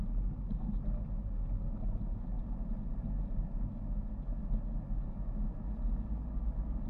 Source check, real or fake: real